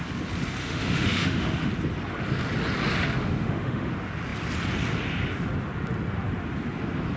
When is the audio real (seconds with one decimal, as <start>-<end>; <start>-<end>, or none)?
0.0-0.6; 1.7-3.2; 3.9-7.2